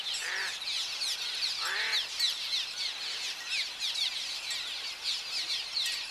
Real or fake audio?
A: real